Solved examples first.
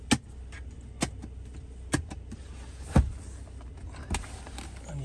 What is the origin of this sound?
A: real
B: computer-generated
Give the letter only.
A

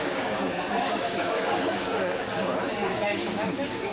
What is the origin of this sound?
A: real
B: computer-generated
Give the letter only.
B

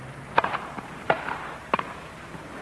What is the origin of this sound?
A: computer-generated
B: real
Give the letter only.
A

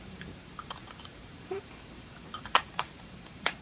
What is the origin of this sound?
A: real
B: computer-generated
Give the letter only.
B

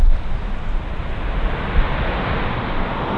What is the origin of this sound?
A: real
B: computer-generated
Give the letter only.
A